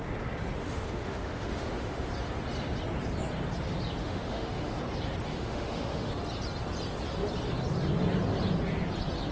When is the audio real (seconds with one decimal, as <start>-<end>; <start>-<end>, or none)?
0.0-0.6; 2.1-4.0; 4.8-5.3; 6.1-9.3